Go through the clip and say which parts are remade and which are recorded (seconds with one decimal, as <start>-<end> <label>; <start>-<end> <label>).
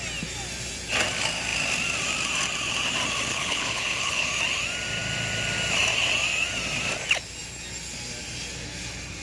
0.0-3.3 recorded; 3.3-4.3 remade; 4.3-9.2 recorded